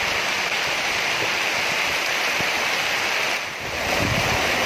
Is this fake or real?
real